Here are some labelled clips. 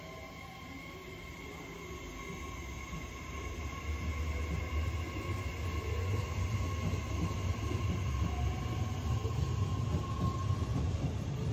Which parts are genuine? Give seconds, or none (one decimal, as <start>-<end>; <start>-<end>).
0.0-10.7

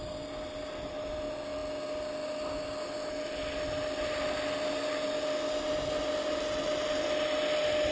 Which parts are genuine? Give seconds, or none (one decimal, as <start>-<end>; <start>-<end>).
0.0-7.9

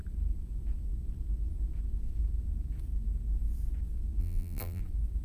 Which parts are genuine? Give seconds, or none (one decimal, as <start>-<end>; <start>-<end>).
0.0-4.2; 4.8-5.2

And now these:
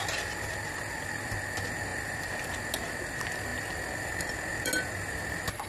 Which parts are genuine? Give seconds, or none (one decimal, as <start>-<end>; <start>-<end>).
0.0-5.7

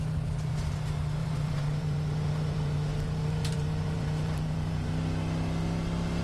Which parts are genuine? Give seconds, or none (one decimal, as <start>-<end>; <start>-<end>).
0.0-1.2; 4.9-6.2